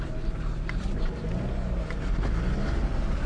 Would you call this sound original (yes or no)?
yes